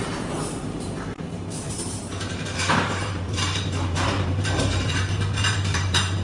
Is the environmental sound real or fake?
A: fake